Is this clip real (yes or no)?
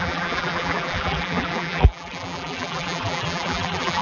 no